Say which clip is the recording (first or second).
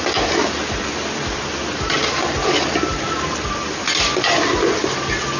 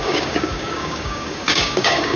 first